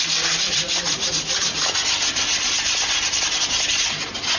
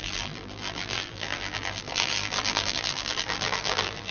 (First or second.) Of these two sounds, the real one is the first